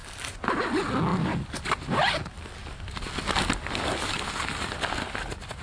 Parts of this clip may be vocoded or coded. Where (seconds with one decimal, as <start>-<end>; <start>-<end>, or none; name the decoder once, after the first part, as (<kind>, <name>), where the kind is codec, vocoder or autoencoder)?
0.0-0.7 (vocoder, BigVGAN v2); 2.6-4.1